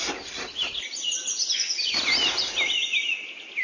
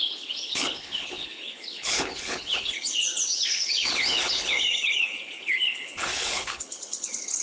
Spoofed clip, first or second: second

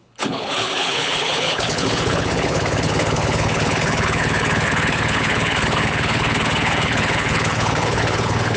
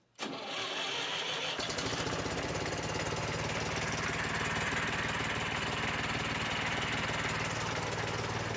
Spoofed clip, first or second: first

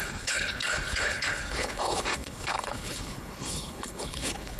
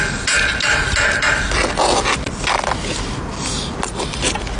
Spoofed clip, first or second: first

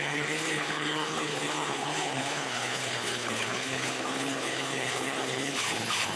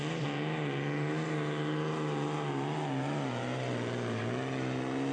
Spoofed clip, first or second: first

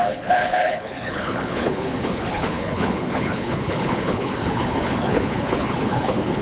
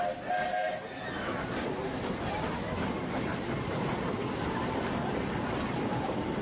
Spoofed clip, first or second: first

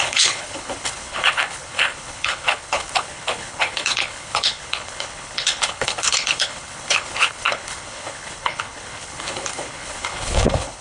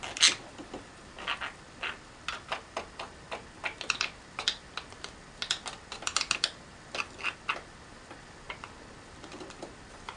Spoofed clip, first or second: first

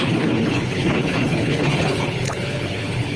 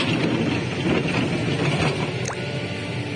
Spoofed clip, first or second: first